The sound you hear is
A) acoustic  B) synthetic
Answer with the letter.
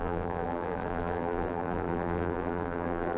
B